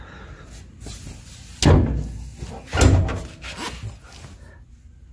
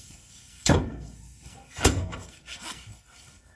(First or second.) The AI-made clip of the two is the second